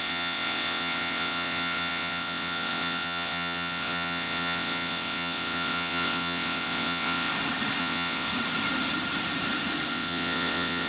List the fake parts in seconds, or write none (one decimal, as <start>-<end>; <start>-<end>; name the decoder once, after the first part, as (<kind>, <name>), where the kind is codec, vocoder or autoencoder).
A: 0.0-7.3 (vocoder, WaveNeXt); 7.8-8.3; 9.9-10.9